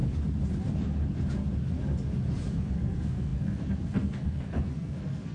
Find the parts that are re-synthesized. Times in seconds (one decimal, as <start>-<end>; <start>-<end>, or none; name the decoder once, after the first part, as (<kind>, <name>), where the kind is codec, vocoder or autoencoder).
2.5-5.3 (codec, SNAC)